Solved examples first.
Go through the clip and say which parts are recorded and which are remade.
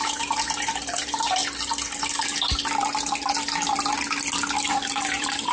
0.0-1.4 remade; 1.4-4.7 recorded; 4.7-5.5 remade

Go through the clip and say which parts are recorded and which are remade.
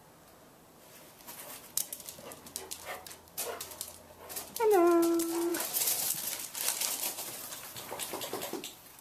0.0-9.0 recorded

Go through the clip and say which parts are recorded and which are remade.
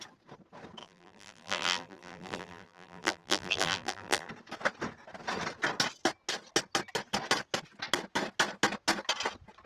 0.0-0.8 recorded; 0.8-4.3 remade; 4.3-9.7 recorded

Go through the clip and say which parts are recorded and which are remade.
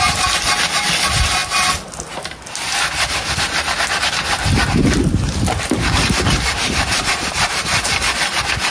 0.0-6.5 recorded; 6.5-8.0 remade; 8.0-8.7 recorded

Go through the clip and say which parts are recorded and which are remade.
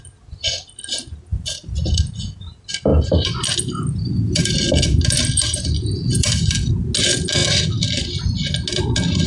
0.0-1.3 recorded; 1.3-2.2 remade; 2.2-2.9 recorded; 2.9-6.7 remade; 6.7-9.3 recorded